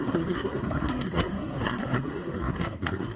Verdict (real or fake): fake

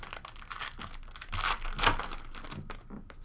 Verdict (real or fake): real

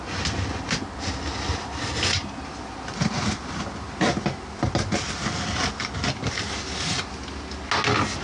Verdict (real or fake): real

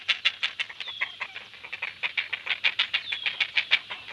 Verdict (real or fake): real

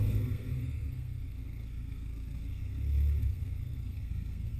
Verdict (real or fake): fake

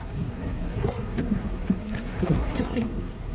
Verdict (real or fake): fake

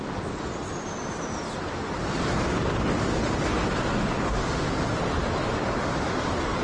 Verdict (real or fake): real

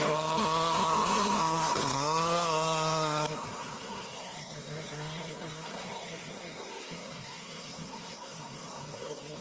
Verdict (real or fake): fake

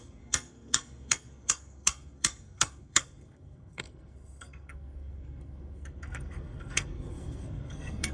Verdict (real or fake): fake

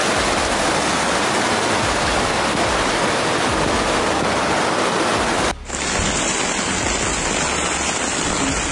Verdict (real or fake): real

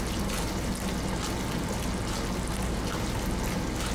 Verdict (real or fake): real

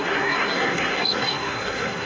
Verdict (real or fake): fake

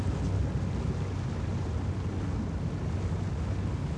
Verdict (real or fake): real